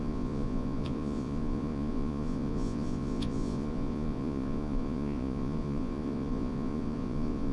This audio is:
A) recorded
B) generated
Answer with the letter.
B